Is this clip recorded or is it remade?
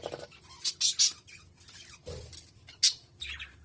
recorded